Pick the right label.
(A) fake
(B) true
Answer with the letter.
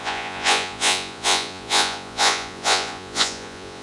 A